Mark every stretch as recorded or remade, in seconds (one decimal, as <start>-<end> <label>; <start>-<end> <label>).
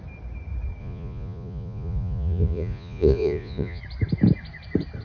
0.0-0.8 recorded; 0.8-3.8 remade; 3.8-5.0 recorded